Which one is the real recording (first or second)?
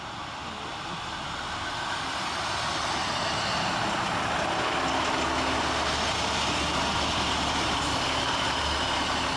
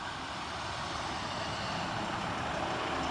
first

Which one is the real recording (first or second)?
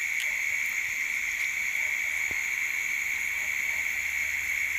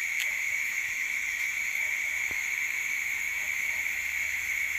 first